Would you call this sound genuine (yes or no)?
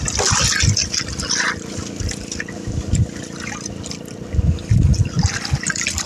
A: yes